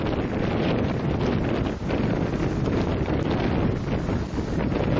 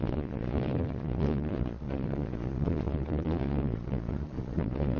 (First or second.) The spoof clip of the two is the second